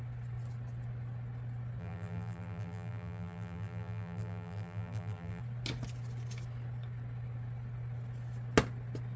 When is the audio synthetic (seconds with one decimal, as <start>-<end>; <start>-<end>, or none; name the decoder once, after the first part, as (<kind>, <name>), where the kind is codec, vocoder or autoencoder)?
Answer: 1.8-5.4 (vocoder, BigVGAN v2)